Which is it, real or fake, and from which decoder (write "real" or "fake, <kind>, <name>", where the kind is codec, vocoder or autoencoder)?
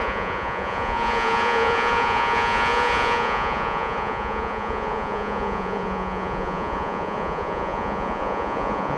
fake, vocoder, Vocos